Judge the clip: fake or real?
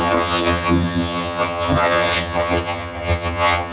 fake